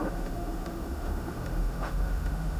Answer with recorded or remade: remade